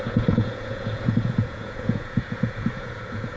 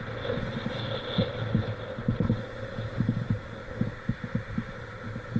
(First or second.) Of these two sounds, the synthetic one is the first